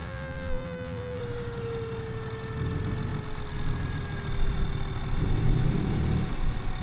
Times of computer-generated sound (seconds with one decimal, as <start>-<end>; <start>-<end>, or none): 0.0-1.2